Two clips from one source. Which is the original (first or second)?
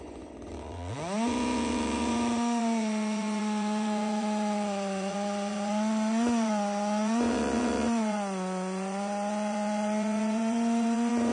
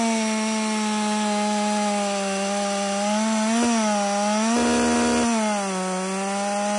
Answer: second